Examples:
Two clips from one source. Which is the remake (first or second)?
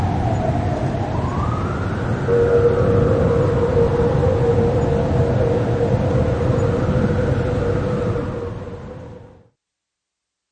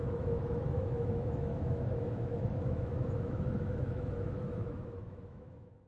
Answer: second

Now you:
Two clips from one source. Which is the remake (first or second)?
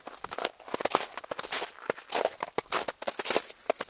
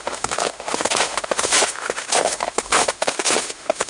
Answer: second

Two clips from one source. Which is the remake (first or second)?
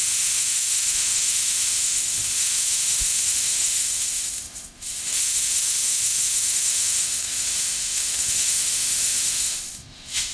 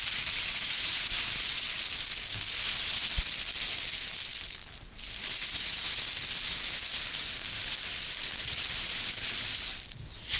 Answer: first